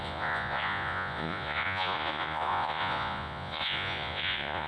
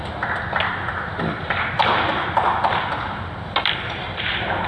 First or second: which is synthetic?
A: first